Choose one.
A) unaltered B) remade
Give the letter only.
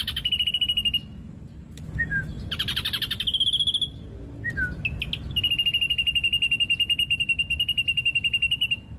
A